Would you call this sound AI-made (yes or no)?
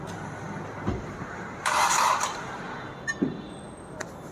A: no